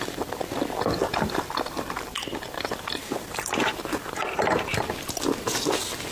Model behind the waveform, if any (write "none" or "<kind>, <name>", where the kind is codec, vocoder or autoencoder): none